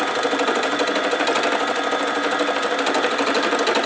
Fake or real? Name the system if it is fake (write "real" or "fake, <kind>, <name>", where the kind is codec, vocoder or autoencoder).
real